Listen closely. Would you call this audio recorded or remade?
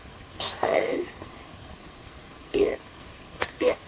remade